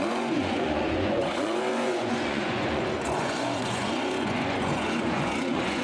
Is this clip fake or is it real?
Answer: fake